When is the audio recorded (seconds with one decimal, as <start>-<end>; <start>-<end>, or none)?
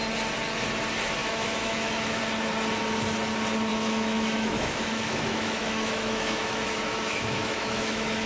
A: 0.0-1.2; 2.2-3.7